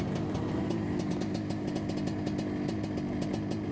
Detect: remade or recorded recorded